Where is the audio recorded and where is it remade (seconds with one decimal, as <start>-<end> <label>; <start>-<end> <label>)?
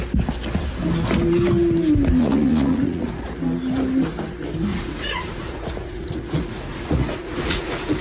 0.0-2.2 recorded; 2.2-3.2 remade; 3.2-4.7 recorded; 4.7-8.0 remade